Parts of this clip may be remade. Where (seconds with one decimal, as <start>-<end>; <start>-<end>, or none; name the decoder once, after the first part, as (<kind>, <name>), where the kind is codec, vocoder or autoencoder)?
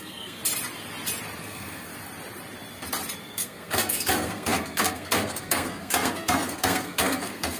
0.0-0.4 (codec, SNAC); 1.4-1.9; 3.2-7.6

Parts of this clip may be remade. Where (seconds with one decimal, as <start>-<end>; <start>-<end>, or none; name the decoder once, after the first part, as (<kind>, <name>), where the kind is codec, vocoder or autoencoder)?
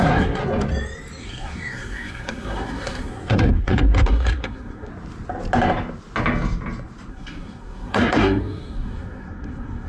0.0-0.4 (codec, SNAC); 1.2-4.9; 7.1-9.9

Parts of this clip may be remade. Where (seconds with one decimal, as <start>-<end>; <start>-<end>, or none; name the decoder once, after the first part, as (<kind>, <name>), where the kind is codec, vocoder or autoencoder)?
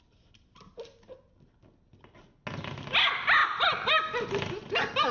none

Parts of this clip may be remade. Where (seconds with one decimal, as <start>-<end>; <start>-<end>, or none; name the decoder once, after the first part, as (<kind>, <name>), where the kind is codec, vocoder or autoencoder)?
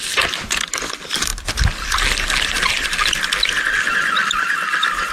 none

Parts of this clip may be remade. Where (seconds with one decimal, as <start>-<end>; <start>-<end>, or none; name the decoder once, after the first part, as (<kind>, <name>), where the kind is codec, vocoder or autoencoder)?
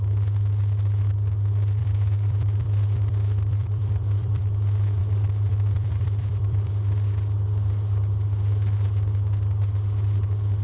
1.8-4.4 (vocoder, BigVGAN v2); 5.0-6.7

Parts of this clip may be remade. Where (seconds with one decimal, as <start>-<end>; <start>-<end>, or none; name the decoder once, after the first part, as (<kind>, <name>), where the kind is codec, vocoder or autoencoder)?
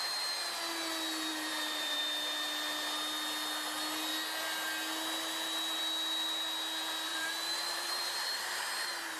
1.3-2.0 (vocoder, BigVGAN v2); 7.1-8.6